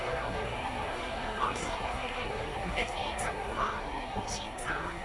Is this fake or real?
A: fake